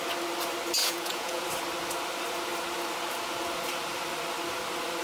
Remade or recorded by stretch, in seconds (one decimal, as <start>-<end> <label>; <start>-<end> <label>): 0.0-0.8 recorded; 0.8-1.4 remade; 1.4-5.0 recorded